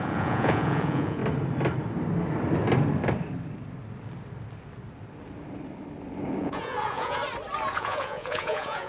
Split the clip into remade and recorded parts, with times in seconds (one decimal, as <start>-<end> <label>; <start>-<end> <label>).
0.0-1.2 remade; 1.2-6.4 recorded; 6.4-7.2 remade; 7.2-7.7 recorded; 7.7-8.9 remade